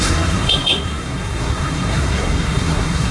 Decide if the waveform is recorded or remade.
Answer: remade